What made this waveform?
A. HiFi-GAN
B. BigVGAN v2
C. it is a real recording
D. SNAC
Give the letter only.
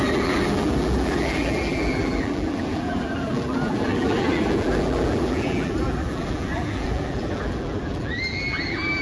B